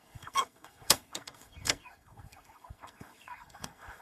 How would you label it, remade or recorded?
remade